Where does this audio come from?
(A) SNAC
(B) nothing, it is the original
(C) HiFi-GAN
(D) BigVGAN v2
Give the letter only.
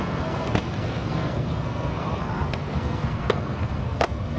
A